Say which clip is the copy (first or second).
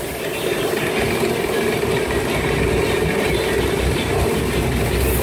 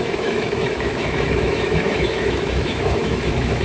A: second